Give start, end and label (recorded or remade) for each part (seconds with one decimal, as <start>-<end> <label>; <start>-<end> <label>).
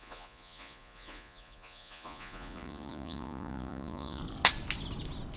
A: 0.0-4.2 remade; 4.2-5.4 recorded